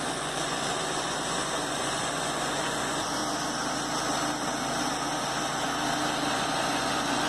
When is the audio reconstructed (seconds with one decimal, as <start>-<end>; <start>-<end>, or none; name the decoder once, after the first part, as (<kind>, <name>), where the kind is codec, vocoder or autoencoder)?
0.0-3.2 (vocoder, Vocos); 6.3-7.3